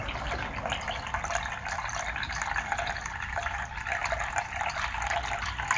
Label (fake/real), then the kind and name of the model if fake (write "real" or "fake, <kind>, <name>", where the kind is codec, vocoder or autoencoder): real